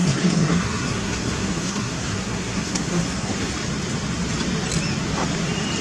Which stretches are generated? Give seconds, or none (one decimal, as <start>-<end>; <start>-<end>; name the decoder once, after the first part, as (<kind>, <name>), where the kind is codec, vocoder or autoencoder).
0.0-3.5 (codec, SNAC)